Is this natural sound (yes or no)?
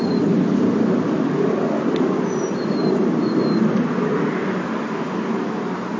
yes